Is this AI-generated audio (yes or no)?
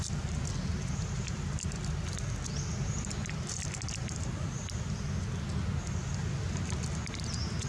no